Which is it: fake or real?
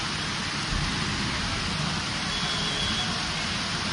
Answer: real